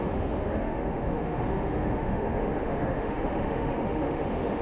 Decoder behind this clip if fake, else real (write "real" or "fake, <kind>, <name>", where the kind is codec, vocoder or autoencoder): fake, autoencoder, DAC-VAE